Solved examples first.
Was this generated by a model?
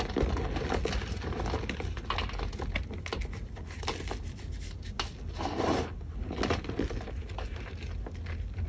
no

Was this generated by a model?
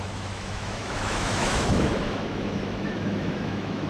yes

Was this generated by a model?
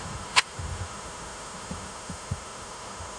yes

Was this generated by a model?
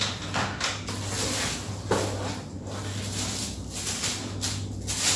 no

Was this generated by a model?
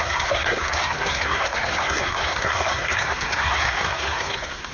yes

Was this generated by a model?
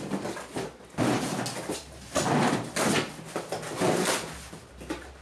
no